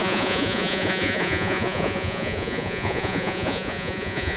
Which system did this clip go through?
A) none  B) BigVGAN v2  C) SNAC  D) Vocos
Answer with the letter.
D